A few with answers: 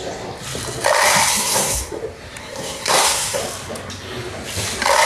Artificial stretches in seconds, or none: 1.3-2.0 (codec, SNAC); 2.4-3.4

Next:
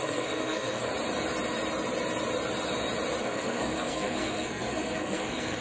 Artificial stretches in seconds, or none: 0.0-0.9 (codec, SNAC); 3.2-5.6

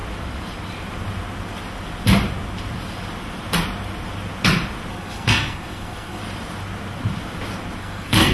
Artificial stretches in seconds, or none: 4.9-6.2 (codec, SNAC); 7.8-8.3